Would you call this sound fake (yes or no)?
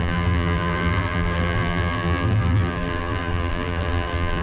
yes